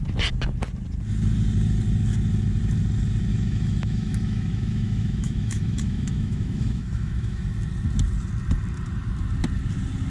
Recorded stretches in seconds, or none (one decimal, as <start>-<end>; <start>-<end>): 0.0-3.3; 7.5-10.1